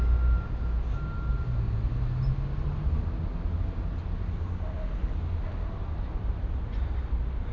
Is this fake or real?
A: real